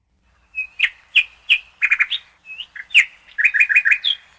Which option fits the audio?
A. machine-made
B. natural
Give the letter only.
B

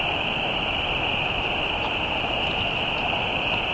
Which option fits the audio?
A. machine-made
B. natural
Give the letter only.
B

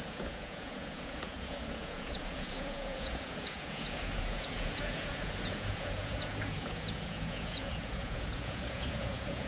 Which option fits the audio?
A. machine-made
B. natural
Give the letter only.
A